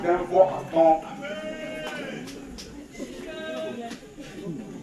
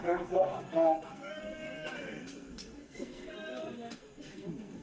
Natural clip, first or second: first